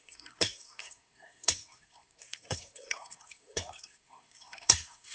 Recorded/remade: remade